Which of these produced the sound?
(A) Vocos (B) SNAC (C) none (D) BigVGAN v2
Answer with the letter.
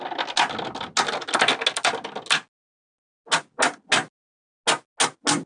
C